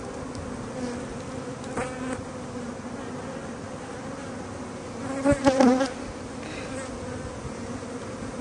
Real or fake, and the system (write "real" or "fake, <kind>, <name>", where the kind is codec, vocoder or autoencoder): real